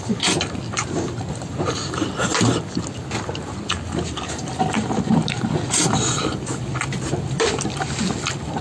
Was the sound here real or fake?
real